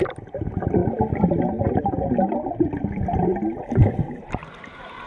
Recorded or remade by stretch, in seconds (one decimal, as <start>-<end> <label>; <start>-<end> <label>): 0.0-0.8 remade; 0.8-3.9 recorded; 3.9-4.4 remade; 4.4-5.1 recorded